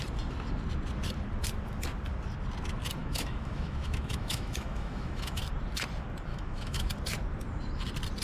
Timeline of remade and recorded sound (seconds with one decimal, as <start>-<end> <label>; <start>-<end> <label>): 0.0-3.0 recorded; 3.0-5.4 remade; 5.4-6.3 recorded; 6.3-6.9 remade; 6.9-8.2 recorded

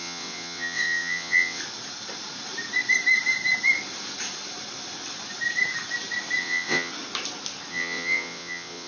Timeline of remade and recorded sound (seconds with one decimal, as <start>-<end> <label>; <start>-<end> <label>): 0.0-1.6 remade; 1.6-6.4 recorded; 6.4-6.9 remade; 6.9-7.7 recorded; 7.7-8.9 remade

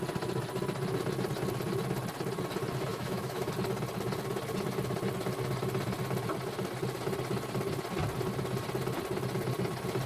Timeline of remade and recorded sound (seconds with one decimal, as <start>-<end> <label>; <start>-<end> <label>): 0.0-2.9 recorded; 2.9-3.5 remade; 3.5-10.1 recorded